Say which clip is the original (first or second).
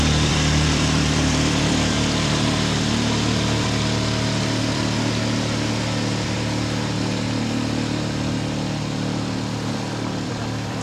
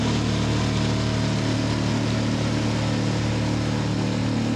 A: second